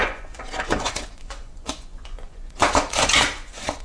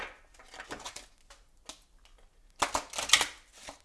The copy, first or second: first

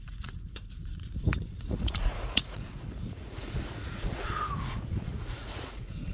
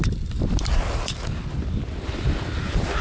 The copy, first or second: first